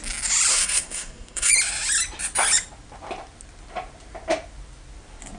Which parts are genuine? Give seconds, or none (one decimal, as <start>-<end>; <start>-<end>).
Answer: 0.0-0.5; 1.5-5.4